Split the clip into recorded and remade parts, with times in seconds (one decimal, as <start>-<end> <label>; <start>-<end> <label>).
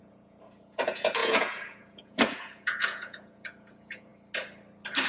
0.0-4.1 remade; 4.1-5.1 recorded